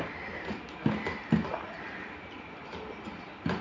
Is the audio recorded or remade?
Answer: recorded